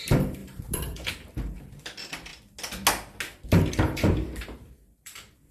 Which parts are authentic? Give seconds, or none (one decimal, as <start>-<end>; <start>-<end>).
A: 2.3-3.7